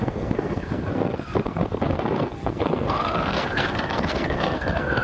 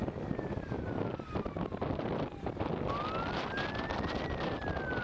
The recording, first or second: second